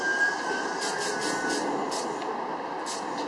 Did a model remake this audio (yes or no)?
no